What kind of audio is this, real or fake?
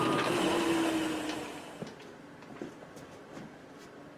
real